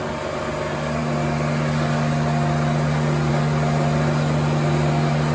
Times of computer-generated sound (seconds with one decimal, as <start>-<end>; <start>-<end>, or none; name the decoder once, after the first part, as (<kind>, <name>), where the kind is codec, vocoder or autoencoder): none